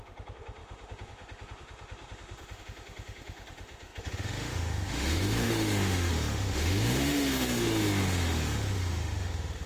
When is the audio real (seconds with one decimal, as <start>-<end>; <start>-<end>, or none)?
none

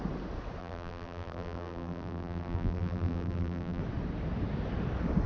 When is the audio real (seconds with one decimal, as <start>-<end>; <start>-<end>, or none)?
0.0-0.6; 3.8-5.3

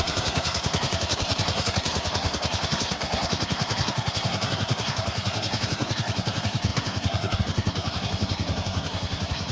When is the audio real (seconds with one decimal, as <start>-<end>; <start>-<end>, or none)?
none

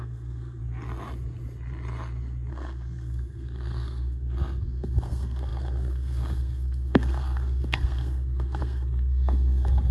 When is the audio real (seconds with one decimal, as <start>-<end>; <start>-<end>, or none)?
0.6-2.5

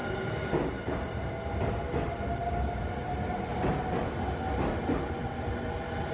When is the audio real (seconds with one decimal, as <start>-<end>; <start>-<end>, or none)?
0.0-6.1